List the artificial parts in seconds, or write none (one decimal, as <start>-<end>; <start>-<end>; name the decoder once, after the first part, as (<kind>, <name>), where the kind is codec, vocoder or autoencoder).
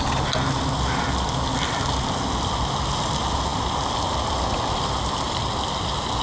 none